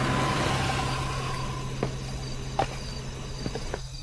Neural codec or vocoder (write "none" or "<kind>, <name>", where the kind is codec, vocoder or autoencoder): none